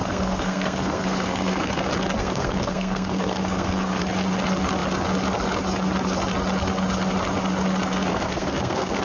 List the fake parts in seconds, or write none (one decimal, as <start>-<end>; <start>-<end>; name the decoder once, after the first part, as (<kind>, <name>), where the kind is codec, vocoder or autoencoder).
0.0-1.7 (codec, SNAC); 2.2-4.0; 8.1-9.0